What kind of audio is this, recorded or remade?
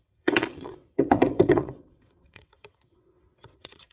remade